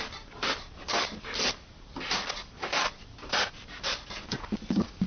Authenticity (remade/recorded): remade